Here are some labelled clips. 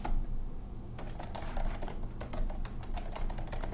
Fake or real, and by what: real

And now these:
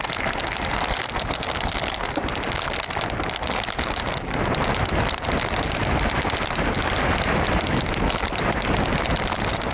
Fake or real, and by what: real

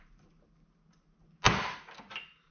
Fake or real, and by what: real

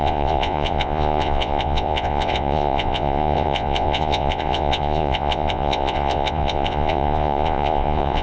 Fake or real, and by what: fake, vocoder, Vocos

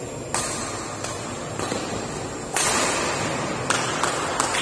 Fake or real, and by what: real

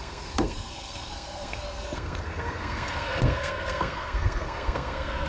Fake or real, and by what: fake, codec, SNAC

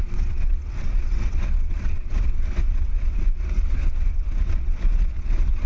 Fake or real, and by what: fake, vocoder, WaveNeXt